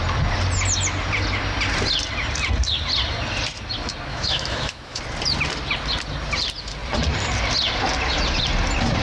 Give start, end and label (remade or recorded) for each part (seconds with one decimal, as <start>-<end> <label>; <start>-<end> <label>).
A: 0.0-4.1 recorded; 4.1-5.0 remade; 5.0-9.0 recorded